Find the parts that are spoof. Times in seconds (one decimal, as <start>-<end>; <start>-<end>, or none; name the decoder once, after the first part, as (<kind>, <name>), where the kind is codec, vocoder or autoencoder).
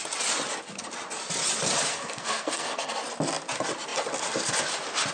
1.9-2.9 (codec, SNAC)